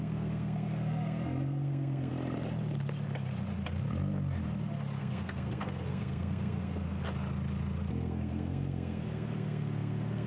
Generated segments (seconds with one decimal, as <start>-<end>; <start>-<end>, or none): 0.0-2.1; 5.0-7.0; 7.9-10.3